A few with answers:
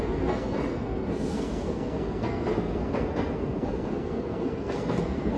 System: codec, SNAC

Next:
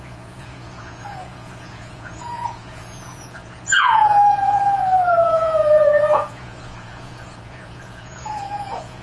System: vocoder, Vocos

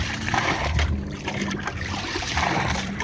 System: vocoder, BigVGAN v2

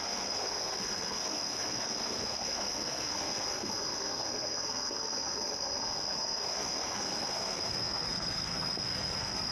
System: codec, SNAC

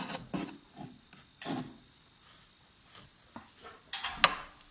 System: none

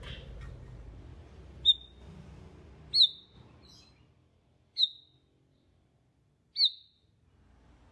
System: none